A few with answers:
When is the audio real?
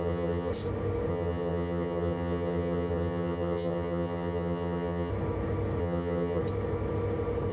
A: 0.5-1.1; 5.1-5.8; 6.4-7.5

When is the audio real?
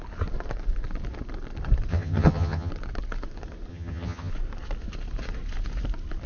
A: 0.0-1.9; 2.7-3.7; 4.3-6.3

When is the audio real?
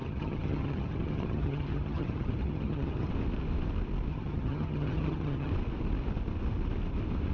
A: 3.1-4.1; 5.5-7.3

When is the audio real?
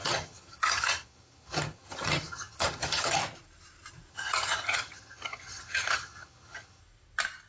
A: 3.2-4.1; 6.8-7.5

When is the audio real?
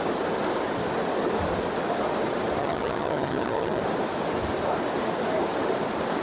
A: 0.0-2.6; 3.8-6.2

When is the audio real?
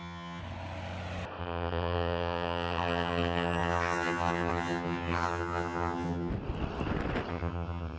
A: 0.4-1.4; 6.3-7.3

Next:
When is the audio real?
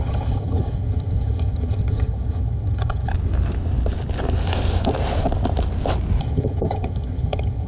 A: 3.1-6.2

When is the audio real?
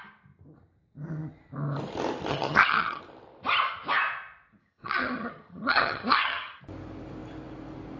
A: 0.0-2.3; 3.0-4.6; 6.6-8.0